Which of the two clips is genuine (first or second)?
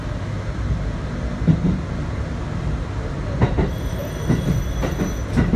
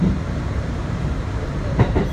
first